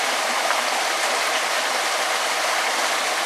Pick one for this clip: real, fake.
real